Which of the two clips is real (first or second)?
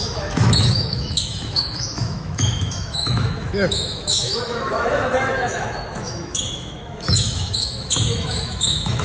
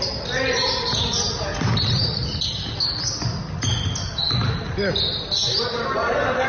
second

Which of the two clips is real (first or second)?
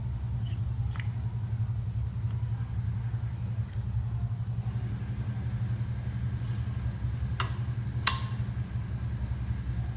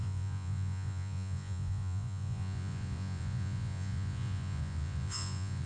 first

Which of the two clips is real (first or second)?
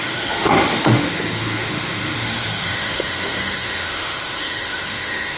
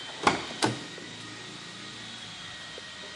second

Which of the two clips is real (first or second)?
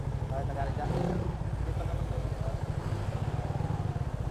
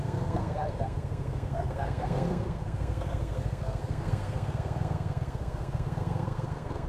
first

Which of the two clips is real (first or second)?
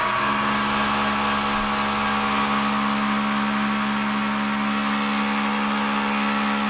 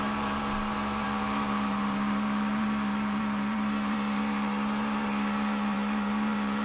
first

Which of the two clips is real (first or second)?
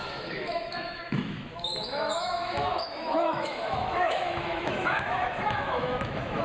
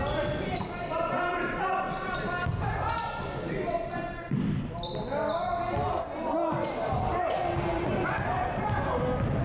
second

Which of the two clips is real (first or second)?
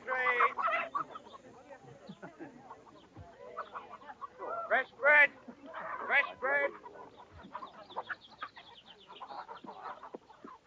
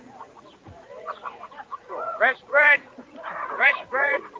first